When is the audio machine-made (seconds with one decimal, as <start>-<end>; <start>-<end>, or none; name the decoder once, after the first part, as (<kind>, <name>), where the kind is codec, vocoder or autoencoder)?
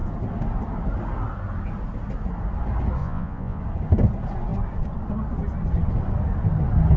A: 3.0-3.6 (vocoder, Vocos)